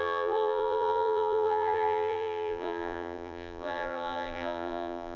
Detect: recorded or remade remade